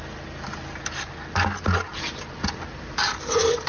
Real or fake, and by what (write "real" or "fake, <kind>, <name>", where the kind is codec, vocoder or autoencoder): real